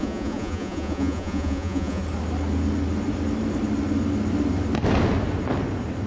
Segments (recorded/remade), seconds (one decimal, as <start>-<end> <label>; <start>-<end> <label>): 0.0-2.0 remade; 2.0-6.1 recorded